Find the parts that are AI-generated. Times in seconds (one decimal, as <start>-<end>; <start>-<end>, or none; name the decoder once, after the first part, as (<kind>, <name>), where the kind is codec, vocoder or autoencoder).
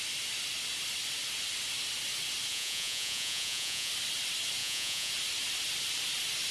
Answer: 2.5-3.9 (vocoder, Vocos); 4.6-5.1